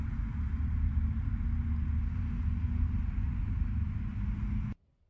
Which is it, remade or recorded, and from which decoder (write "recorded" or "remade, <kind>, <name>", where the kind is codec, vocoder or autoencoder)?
recorded